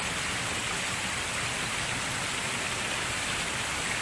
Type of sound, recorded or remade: recorded